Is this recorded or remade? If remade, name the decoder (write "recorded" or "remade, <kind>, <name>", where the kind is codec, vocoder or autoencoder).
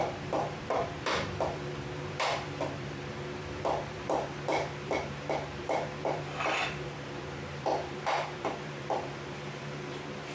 remade, vocoder, BigVGAN v2